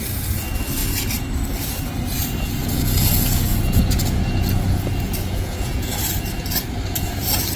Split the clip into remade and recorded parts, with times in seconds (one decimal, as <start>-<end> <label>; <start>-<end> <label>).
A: 0.0-2.6 recorded; 2.6-6.0 remade; 6.0-7.6 recorded